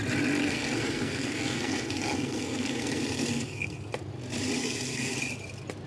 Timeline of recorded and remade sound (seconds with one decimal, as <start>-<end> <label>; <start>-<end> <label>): 0.0-0.4 recorded; 0.4-3.9 remade; 3.9-4.6 recorded; 4.6-5.1 remade; 5.1-5.9 recorded